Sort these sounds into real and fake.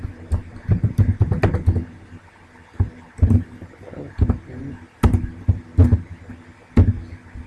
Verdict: real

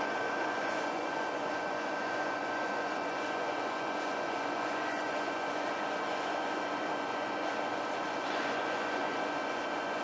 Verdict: fake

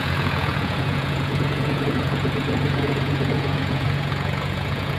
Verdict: fake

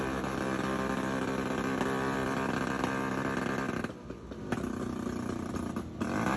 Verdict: real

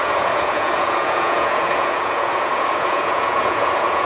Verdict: fake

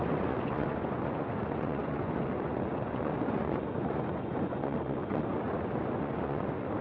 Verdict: fake